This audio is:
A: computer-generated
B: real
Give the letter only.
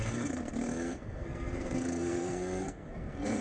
A